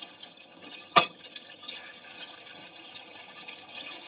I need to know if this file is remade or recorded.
remade